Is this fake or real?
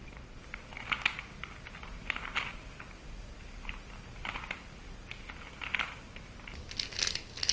real